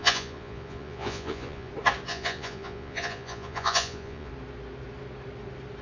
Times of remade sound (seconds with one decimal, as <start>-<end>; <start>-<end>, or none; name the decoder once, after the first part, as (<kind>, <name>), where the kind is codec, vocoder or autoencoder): 0.0-1.7 (vocoder, Vocos); 2.1-4.3